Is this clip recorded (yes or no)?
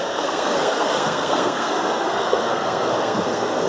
no